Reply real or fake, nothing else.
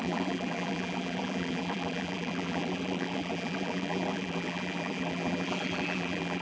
fake